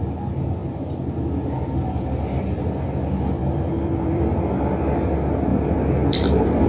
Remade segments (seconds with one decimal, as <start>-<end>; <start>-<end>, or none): 3.4-4.6; 5.5-6.7

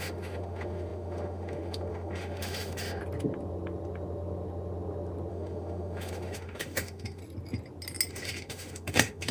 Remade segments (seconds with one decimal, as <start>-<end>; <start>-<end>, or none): 0.0-3.0; 5.3-7.2; 8.1-9.3

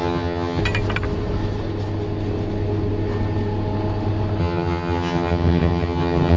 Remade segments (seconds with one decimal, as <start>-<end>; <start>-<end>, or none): 0.0-0.6; 4.4-6.4

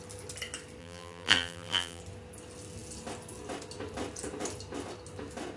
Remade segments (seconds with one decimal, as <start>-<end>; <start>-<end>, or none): 0.8-2.0